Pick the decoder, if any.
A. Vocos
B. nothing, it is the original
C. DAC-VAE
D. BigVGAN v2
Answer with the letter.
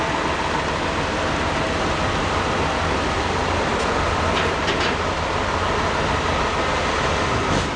B